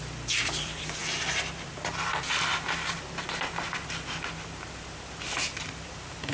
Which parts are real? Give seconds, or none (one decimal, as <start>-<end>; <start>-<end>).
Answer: 1.0-4.8